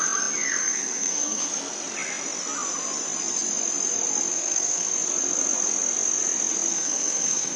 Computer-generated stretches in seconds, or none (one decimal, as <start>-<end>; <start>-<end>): 0.6-1.5; 4.3-4.9; 6.7-7.6